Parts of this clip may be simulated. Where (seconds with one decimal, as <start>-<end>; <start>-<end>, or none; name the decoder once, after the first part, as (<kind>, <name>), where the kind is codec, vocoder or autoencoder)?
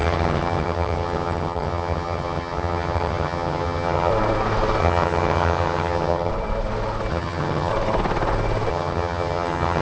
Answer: 0.0-4.1 (vocoder, HiFi-GAN); 4.8-6.3; 7.1-7.7; 8.7-9.8